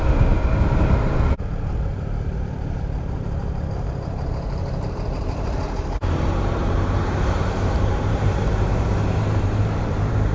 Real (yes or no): no